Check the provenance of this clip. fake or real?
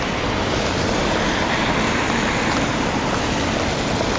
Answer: real